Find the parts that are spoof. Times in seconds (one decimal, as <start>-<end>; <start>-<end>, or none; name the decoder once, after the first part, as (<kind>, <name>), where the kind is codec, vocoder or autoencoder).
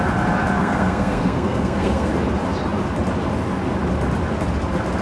0.6-2.1 (codec, SNAC)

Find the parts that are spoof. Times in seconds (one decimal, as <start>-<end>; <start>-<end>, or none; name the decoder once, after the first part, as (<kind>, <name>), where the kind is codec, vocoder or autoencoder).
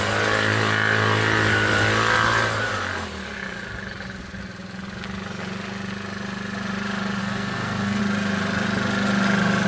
7.2-8.0 (codec, SNAC)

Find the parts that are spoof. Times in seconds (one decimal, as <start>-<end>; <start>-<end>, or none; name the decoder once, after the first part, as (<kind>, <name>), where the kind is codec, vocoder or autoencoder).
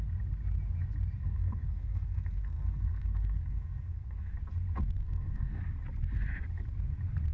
1.2-4.3 (codec, SNAC); 5.0-5.6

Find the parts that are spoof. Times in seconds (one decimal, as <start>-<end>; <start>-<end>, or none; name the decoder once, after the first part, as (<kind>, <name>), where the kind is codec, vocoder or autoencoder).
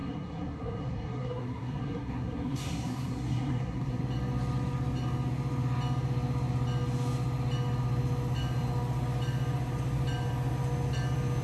0.0-4.0 (codec, SNAC)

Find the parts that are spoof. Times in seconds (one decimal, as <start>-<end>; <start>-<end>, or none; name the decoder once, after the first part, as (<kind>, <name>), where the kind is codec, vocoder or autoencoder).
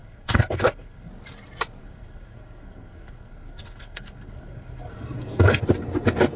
0.0-1.1 (codec, SNAC); 1.8-5.6